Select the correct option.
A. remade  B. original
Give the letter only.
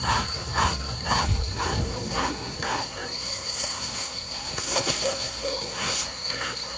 A